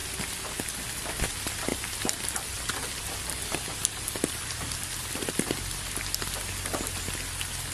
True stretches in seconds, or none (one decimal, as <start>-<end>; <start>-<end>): 0.0-1.7; 6.2-7.7